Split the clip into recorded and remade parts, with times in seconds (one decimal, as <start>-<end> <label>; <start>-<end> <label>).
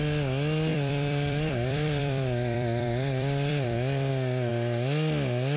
0.0-0.7 recorded; 0.7-4.1 remade; 4.1-4.5 recorded; 4.5-5.6 remade